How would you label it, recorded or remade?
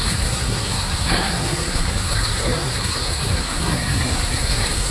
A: remade